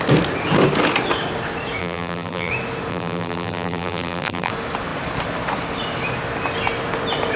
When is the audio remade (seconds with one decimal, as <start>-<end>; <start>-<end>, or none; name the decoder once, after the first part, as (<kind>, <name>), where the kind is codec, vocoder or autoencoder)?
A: 1.8-2.5 (vocoder, BigVGAN v2); 2.9-4.5